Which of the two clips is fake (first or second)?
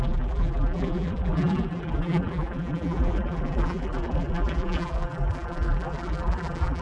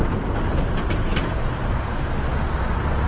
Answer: first